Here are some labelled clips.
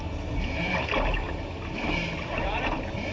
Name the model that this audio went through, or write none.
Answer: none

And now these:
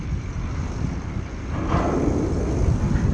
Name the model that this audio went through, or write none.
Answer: none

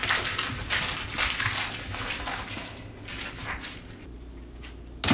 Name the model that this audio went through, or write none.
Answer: none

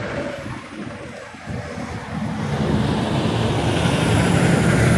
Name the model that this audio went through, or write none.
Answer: none